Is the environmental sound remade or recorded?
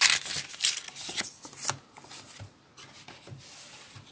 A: recorded